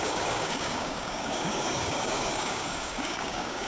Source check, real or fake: fake